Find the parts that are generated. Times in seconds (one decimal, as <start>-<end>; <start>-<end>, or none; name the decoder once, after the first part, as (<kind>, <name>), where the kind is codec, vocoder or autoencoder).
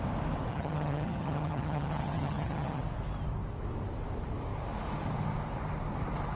0.5-2.8 (vocoder, HiFi-GAN)